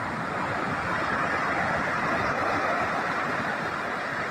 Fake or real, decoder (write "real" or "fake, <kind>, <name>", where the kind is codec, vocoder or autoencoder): real